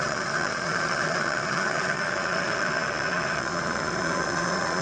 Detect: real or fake fake